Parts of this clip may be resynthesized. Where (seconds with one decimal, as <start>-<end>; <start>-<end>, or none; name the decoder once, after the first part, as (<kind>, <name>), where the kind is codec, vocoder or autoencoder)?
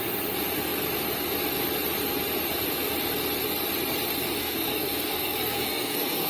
4.4-6.3 (codec, SNAC)